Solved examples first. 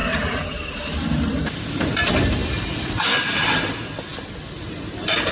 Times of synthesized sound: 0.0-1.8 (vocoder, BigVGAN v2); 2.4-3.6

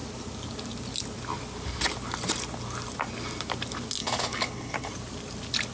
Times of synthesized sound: 4.0-4.9 (codec, HILCodec)

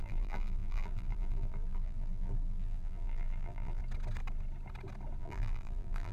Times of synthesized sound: 0.0-3.8 (vocoder, BigVGAN v2); 5.2-6.1

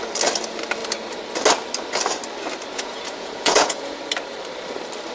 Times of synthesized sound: 2.7-4.0 (vocoder, Vocos)